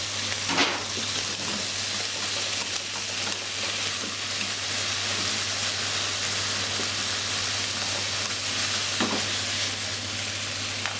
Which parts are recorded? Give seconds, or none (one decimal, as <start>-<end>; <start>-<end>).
0.0-11.0